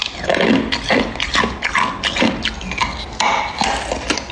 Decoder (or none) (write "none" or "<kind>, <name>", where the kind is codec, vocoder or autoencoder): none